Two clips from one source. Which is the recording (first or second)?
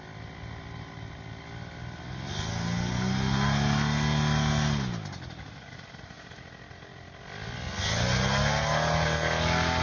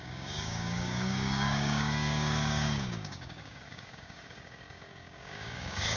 first